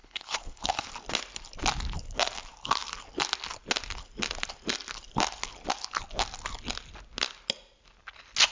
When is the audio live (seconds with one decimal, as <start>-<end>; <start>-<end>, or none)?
0.9-8.5